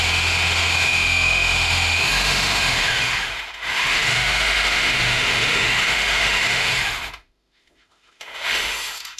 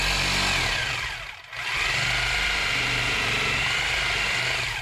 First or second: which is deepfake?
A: first